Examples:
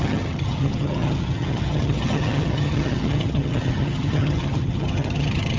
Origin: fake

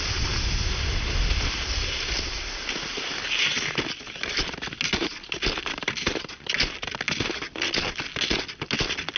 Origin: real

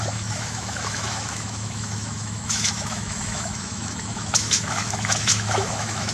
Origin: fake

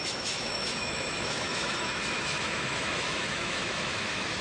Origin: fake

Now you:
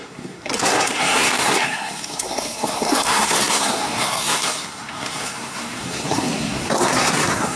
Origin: fake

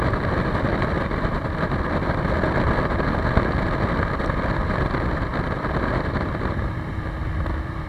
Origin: fake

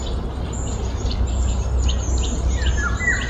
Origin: real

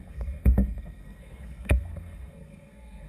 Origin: fake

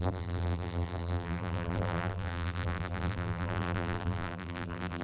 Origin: fake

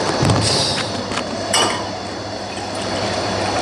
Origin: fake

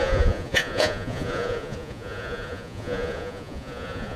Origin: fake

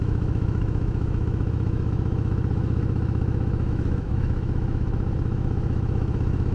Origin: fake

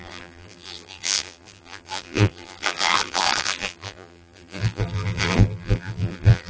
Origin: fake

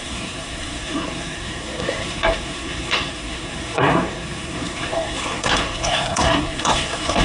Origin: fake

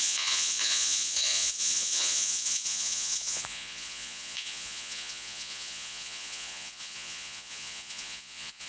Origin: fake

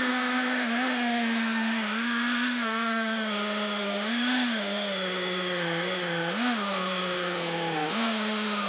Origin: fake